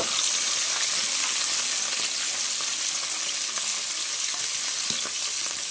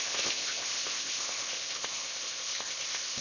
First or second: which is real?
first